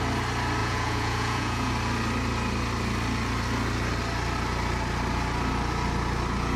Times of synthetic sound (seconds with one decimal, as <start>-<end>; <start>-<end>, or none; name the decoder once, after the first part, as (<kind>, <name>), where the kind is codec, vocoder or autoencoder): 0.6-1.7 (vocoder, Vocos)